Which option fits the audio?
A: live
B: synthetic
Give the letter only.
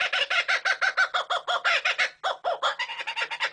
A